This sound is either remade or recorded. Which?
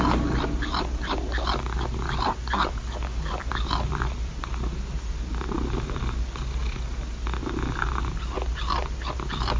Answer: recorded